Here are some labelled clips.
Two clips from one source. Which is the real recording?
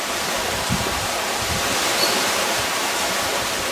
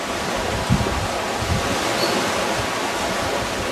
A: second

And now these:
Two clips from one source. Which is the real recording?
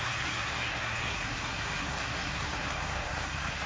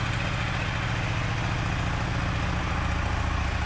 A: second